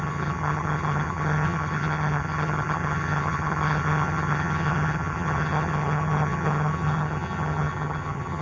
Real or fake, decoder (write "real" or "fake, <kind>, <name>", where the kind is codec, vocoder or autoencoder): fake, vocoder, HiFi-GAN